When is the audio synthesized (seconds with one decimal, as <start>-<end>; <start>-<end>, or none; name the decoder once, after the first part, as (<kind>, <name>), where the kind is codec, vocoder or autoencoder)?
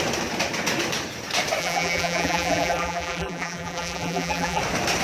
1.6-4.6 (vocoder, BigVGAN v2)